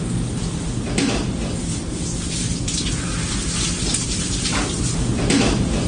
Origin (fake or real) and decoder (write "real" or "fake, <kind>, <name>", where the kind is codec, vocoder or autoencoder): real